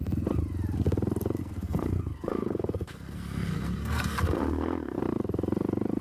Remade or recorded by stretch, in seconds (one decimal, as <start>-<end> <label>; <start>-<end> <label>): 0.0-1.4 recorded; 1.4-5.0 remade; 5.0-6.0 recorded